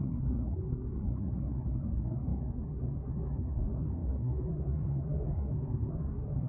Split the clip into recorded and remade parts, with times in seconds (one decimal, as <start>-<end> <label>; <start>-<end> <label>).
0.0-6.5 remade

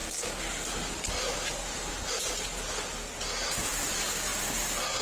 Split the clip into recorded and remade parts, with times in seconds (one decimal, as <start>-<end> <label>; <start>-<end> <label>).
0.0-5.0 recorded

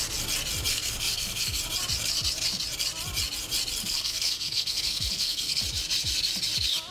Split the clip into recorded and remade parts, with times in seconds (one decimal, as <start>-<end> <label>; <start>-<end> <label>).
0.0-0.7 recorded; 0.7-1.6 remade; 1.6-3.8 recorded; 3.8-5.6 remade; 5.6-6.9 recorded